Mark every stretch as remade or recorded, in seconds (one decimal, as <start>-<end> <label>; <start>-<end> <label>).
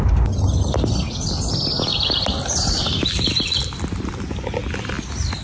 0.0-1.9 recorded; 1.9-4.1 remade; 4.1-5.4 recorded